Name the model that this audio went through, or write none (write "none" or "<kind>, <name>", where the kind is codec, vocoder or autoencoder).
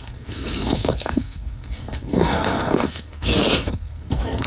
codec, SNAC